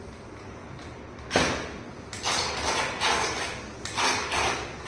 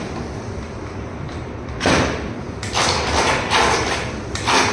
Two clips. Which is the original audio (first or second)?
first